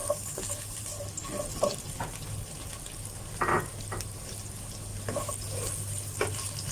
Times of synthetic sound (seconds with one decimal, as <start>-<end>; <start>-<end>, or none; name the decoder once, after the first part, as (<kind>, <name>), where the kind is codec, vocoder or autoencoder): none